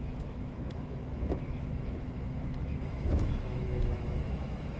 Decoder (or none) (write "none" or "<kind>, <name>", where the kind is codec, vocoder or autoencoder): autoencoder, DAC-VAE